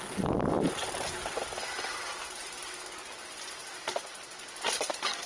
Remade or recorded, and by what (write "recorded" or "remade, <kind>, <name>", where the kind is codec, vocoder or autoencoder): recorded